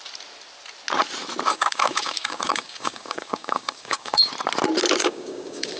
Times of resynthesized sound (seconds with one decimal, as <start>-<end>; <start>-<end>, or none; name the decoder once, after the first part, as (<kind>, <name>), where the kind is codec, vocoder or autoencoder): 1.5-4.3 (codec, DAC); 5.0-5.8